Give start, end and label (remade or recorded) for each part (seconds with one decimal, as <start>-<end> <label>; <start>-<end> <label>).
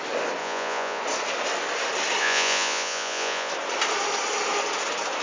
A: 0.0-0.4 recorded; 0.4-1.0 remade; 1.0-2.2 recorded; 2.2-3.5 remade; 3.5-5.2 recorded